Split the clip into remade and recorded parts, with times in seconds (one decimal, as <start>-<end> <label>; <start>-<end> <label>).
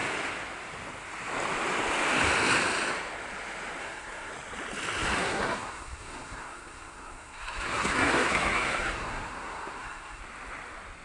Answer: 0.0-3.8 recorded; 3.8-4.3 remade; 4.3-5.2 recorded; 5.2-10.2 remade; 10.2-11.0 recorded